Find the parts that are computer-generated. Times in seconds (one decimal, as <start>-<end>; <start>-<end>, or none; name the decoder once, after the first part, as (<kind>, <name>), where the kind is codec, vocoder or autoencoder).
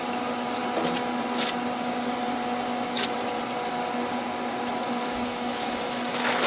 5.0-6.5 (autoencoder, DAC-VAE)